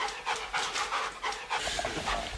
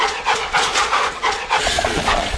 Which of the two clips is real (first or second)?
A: first